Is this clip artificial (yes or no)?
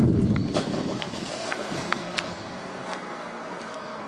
yes